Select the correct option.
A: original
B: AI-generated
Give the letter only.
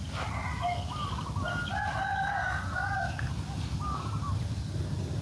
A